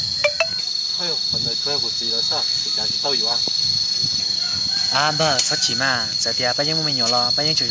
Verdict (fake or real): real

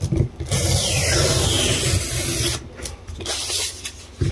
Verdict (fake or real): real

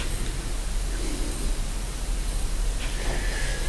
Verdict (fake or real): real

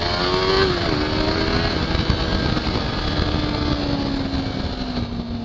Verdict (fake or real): real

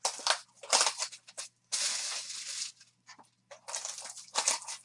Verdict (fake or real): real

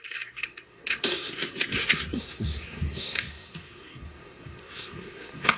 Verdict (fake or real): fake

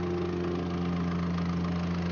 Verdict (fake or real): real